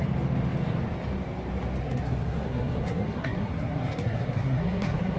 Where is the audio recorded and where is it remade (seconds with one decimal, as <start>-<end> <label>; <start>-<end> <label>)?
0.0-1.8 recorded; 1.8-5.2 remade